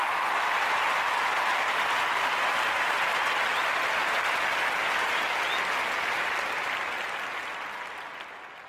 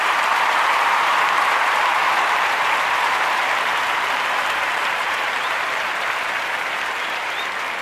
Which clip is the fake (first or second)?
second